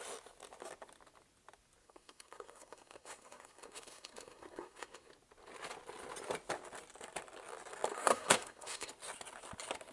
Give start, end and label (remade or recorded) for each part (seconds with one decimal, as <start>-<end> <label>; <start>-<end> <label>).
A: 0.0-1.8 recorded; 1.8-5.1 remade; 5.1-7.9 recorded; 7.9-8.9 remade; 8.9-9.9 recorded